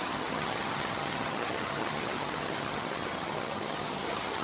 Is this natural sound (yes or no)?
no